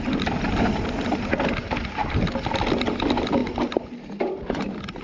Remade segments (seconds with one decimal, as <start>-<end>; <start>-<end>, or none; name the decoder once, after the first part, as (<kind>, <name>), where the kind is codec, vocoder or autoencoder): none